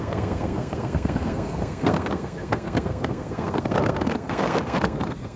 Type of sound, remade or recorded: remade